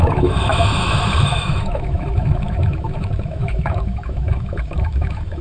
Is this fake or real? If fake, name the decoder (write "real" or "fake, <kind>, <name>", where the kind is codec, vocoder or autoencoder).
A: fake, autoencoder, DAC-VAE